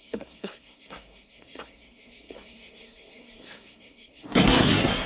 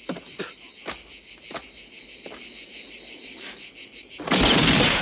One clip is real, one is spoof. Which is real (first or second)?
second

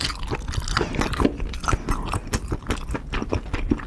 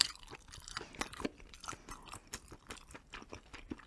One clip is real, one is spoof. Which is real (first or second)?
first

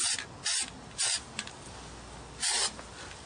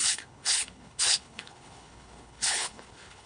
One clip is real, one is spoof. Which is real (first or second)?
first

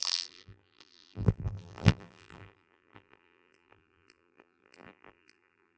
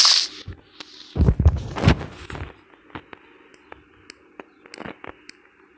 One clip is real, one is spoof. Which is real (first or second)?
second